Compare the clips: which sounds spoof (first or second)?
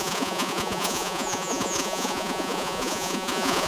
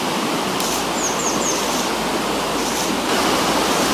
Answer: first